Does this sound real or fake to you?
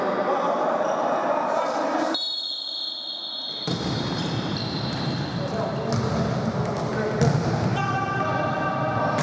real